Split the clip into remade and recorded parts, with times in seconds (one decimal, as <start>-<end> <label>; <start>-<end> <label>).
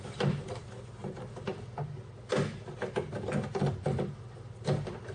0.0-5.1 recorded